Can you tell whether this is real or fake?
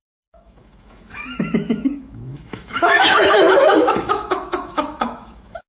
fake